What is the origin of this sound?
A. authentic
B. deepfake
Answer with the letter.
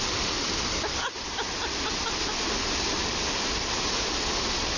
A